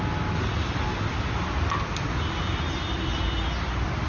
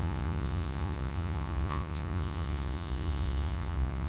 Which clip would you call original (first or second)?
first